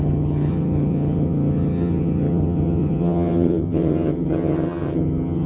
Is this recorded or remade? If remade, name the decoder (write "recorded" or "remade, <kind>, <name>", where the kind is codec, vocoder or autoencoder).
remade, vocoder, HiFi-GAN